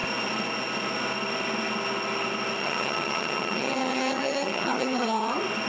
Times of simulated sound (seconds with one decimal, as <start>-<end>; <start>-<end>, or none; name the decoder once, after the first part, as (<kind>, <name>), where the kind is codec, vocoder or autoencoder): 2.6-5.3 (vocoder, HiFi-GAN)